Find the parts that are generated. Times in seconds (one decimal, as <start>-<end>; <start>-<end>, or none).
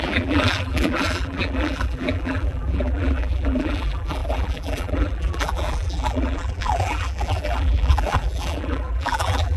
0.0-9.6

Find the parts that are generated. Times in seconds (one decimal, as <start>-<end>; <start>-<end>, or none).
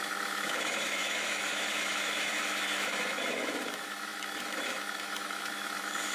0.0-6.1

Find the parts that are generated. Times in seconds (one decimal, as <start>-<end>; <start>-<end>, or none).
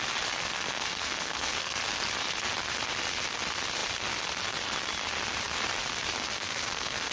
0.4-1.8; 6.2-7.1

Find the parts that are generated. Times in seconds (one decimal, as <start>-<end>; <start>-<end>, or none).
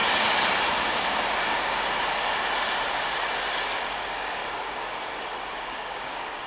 3.7-4.4; 5.5-6.5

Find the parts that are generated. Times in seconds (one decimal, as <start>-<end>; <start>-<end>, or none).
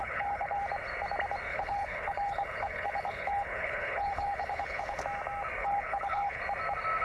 0.0-0.6; 1.5-5.0; 5.6-6.4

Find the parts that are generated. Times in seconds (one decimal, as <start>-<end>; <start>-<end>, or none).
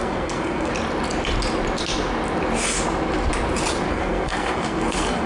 0.0-0.7; 3.9-5.3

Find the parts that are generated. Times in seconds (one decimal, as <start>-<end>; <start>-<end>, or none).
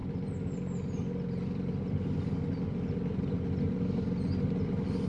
none